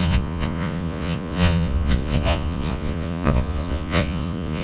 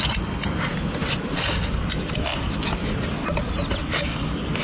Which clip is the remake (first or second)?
first